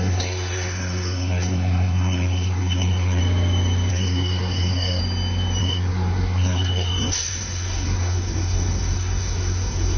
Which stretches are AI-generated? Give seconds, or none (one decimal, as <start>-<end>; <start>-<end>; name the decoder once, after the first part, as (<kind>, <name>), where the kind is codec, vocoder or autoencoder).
0.0-3.2 (codec, SNAC); 3.9-5.0; 5.6-10.0